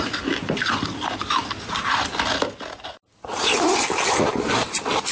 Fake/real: real